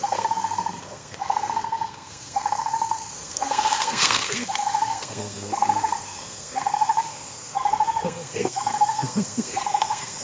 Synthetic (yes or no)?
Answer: yes